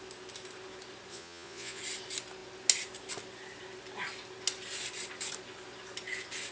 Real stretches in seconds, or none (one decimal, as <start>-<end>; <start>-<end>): 0.0-1.1; 1.8-6.5